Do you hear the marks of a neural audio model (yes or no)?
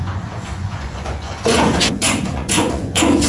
yes